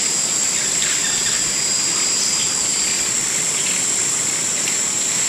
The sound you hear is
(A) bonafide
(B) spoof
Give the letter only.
A